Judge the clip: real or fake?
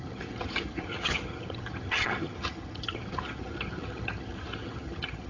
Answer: fake